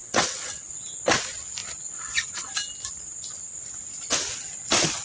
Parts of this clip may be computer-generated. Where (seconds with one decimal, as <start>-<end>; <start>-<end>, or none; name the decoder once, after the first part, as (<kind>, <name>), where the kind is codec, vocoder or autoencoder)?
0.0-0.7 (vocoder, WaveNeXt)